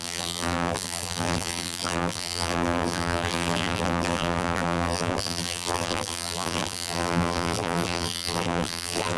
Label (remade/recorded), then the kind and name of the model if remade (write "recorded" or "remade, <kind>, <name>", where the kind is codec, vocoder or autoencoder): remade, vocoder, BigVGAN v2